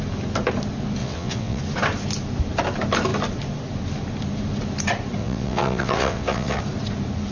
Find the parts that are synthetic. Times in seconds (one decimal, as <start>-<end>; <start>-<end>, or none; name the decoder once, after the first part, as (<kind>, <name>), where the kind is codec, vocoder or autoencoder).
1.0-1.6 (vocoder, WaveNeXt); 5.2-6.6